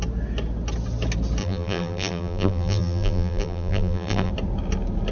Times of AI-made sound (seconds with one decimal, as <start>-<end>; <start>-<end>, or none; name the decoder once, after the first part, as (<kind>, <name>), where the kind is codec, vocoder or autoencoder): 1.4-4.3 (vocoder, BigVGAN v2)